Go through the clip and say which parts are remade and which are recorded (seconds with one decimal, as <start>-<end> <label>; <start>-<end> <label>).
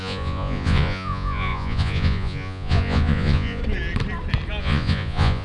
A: 0.0-3.6 remade; 3.6-4.6 recorded; 4.6-5.4 remade